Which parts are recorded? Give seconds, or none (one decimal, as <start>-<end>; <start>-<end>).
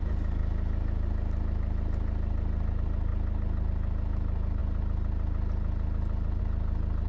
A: 0.0-7.1